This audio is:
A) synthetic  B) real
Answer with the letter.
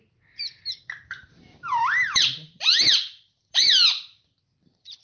A